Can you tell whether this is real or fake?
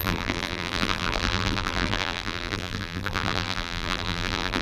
fake